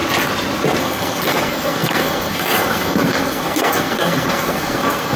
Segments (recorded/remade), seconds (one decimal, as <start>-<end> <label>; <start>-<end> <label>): 0.0-0.8 recorded; 0.8-5.2 remade